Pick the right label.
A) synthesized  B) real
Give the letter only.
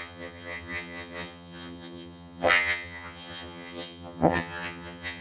A